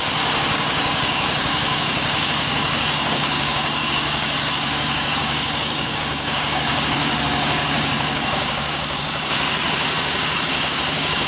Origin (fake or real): fake